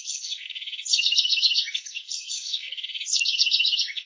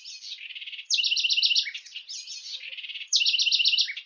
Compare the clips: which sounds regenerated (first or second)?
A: first